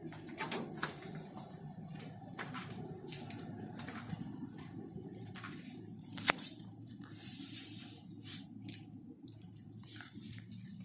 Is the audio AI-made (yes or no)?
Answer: yes